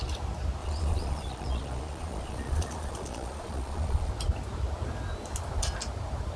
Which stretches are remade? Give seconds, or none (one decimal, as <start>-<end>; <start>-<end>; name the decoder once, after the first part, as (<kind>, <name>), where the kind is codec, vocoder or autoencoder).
0.6-4.1 (vocoder, Vocos)